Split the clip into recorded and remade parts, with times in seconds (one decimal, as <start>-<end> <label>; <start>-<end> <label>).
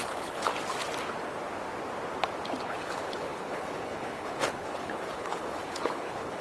0.0-0.5 remade; 0.5-2.6 recorded; 2.6-6.4 remade